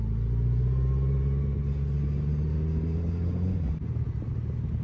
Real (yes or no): yes